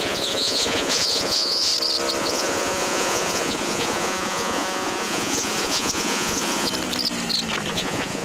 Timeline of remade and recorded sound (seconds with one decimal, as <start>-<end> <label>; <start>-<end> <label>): 0.0-1.7 remade; 1.7-2.2 recorded; 2.2-6.7 remade; 6.7-7.7 recorded; 7.7-8.2 remade